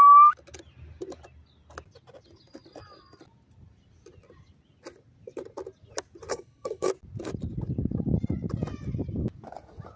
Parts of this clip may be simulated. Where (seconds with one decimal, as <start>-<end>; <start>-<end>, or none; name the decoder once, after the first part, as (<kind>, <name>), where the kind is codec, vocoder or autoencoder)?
6.3-6.9 (codec, HILCodec)